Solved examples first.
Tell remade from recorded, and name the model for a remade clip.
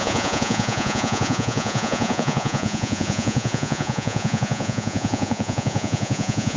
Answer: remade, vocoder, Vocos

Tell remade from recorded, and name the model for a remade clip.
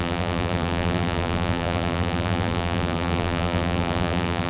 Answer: remade, vocoder, BigVGAN v2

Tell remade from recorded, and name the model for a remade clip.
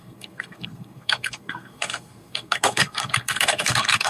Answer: remade, codec, SNAC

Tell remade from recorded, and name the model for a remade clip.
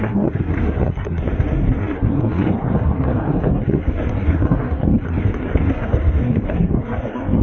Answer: remade, codec, SNAC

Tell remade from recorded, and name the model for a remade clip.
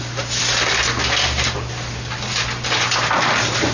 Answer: recorded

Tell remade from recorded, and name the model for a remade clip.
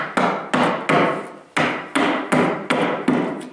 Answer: recorded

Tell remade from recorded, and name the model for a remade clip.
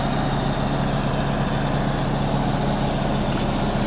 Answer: recorded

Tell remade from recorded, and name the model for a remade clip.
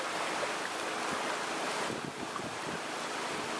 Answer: recorded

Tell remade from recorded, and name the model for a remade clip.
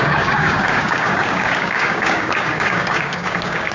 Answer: remade, codec, DAC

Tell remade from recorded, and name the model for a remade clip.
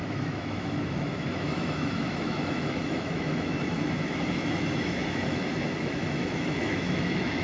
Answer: remade, autoencoder, DAC-VAE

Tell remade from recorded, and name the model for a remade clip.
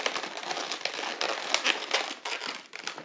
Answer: recorded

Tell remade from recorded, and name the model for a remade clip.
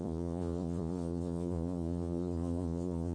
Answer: remade, vocoder, Vocos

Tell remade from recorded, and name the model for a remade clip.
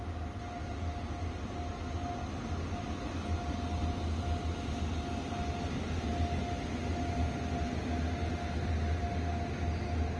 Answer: recorded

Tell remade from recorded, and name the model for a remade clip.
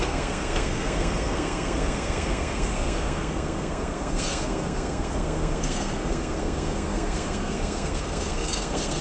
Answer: remade, codec, SNAC